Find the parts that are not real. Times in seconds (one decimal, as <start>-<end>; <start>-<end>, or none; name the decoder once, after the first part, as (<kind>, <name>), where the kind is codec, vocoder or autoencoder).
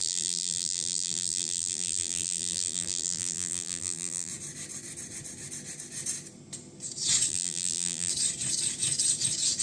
0.0-4.3 (vocoder, BigVGAN v2); 7.3-8.1